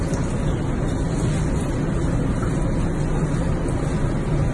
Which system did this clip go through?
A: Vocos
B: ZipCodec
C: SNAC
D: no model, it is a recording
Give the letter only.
D